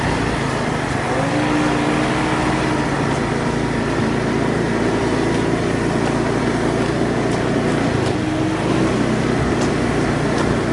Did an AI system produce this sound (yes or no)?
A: no